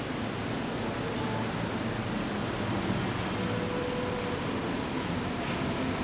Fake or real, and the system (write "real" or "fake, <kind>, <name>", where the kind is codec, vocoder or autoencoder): real